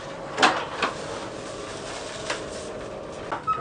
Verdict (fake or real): real